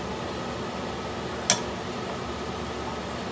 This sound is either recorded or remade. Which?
recorded